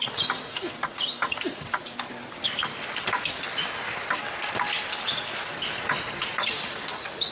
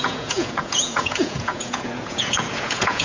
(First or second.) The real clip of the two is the first